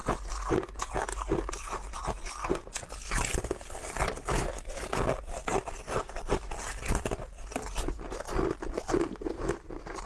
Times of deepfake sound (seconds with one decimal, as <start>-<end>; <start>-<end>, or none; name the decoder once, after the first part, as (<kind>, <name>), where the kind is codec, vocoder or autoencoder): none